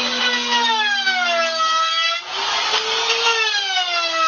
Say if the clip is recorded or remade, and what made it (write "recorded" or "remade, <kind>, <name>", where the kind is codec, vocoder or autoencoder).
recorded